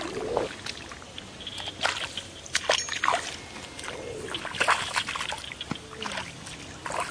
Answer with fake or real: real